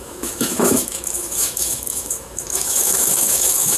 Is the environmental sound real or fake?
fake